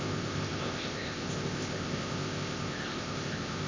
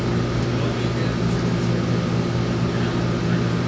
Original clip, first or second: second